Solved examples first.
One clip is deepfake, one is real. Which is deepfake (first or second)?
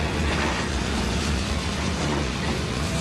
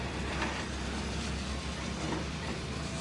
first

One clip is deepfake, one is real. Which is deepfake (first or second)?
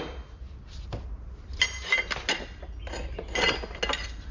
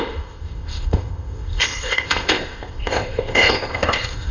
second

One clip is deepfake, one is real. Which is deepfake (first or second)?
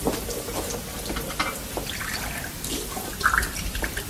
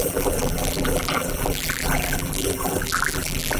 second